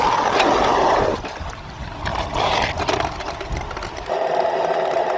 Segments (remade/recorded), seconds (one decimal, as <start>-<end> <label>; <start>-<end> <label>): 0.0-5.2 recorded